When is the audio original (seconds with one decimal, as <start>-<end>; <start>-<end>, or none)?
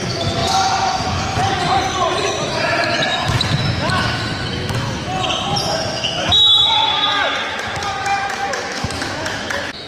1.4-2.2; 5.1-5.7